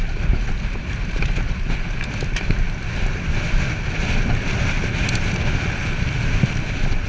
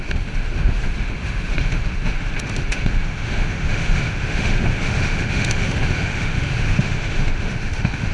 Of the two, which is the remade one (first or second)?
second